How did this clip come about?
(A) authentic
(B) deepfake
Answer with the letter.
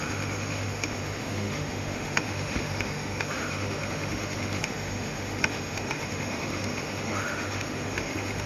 B